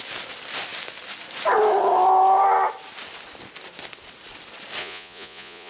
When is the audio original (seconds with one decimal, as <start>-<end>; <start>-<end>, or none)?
0.0-4.8